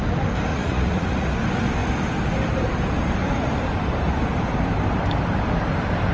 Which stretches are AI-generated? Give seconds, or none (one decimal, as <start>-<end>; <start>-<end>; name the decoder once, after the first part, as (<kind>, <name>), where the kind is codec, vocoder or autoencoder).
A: 0.5-1.3 (vocoder, Vocos)